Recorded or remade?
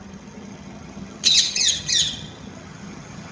remade